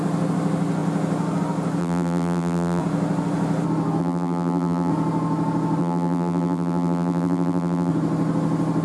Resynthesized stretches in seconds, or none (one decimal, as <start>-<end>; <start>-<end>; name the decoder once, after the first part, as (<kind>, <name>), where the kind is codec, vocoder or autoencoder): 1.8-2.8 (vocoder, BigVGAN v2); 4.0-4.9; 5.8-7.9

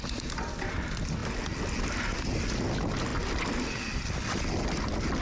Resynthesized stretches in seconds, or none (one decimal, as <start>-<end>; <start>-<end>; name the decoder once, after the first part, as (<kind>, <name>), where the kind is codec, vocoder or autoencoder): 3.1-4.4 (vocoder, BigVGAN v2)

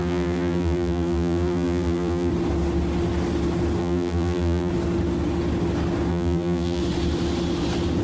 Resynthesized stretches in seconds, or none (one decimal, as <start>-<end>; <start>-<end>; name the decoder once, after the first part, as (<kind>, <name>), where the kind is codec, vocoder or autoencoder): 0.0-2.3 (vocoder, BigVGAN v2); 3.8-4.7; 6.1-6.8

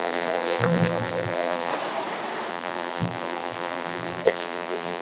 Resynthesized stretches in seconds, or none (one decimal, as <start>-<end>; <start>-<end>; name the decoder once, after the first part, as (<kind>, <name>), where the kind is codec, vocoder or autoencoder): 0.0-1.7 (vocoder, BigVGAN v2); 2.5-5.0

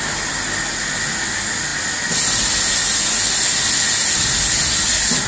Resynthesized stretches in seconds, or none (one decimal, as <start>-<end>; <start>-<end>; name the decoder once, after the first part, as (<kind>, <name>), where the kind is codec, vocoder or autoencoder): none

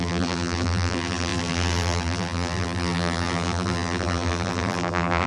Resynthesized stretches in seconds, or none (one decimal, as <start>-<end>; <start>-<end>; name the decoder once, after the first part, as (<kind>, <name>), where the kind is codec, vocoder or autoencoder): 0.0-5.3 (vocoder, BigVGAN v2)

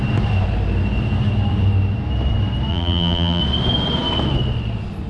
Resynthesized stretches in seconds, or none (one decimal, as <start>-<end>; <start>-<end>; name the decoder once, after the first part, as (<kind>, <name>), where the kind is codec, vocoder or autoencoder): 2.7-3.4 (vocoder, BigVGAN v2)